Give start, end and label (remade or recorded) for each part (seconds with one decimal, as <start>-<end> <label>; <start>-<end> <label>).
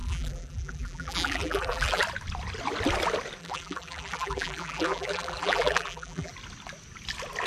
0.0-2.0 remade; 2.0-3.4 recorded; 3.4-6.3 remade; 6.3-7.5 recorded